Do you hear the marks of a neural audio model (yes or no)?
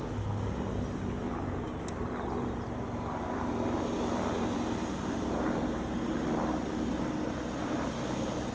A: no